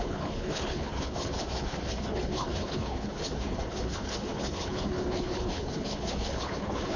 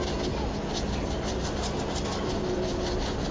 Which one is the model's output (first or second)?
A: first